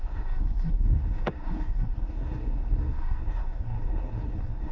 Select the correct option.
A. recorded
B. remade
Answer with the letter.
B